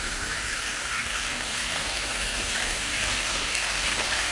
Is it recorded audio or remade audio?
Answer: remade